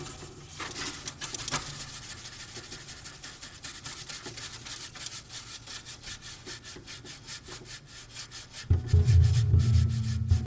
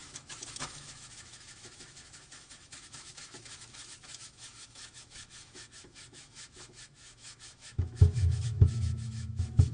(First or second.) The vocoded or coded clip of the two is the second